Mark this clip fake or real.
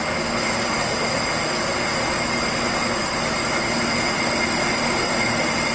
real